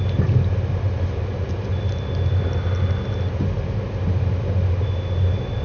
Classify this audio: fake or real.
real